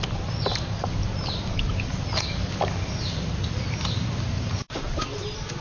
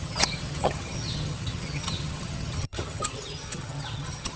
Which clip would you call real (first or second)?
first